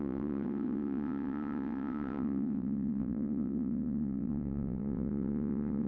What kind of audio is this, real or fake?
fake